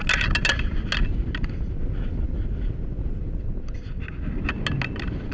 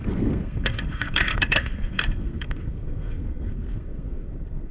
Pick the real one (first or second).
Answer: first